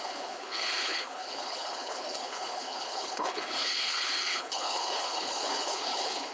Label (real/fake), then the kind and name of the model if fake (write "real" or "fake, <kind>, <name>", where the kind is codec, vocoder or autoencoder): fake, codec, HILCodec